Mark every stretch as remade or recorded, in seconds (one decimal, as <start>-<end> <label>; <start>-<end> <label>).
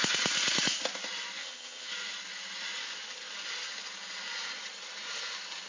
0.0-1.4 recorded; 1.4-1.9 remade; 1.9-5.7 recorded